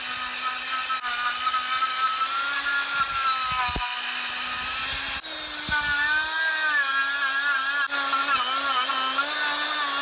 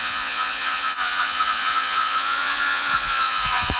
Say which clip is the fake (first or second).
second